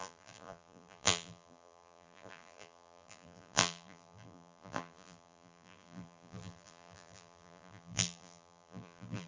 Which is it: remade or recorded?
remade